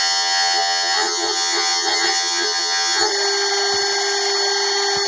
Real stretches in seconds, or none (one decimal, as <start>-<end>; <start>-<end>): 3.1-5.1